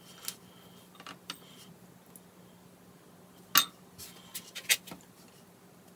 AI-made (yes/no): no